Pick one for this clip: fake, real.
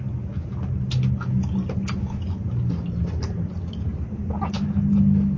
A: real